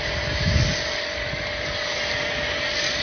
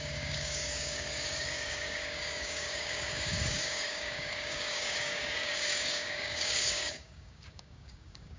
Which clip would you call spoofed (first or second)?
second